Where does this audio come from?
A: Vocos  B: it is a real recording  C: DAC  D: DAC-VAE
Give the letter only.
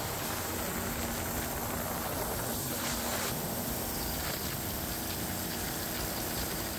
B